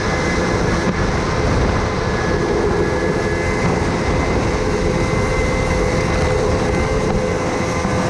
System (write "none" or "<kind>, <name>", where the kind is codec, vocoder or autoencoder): none